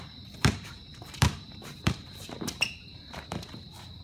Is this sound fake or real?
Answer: fake